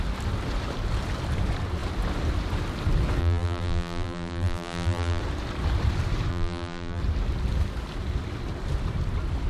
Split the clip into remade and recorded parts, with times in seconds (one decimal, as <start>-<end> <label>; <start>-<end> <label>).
0.0-3.2 recorded; 3.2-5.2 remade; 5.2-6.3 recorded; 6.3-7.0 remade; 7.0-9.5 recorded